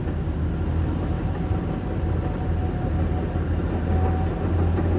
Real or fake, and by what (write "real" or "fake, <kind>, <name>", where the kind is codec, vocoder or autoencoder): real